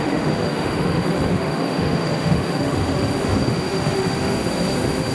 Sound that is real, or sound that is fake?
fake